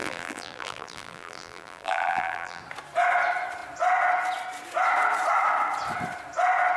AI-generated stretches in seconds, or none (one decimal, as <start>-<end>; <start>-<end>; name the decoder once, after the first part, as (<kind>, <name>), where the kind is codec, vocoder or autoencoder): 0.0-2.6 (vocoder, BigVGAN v2)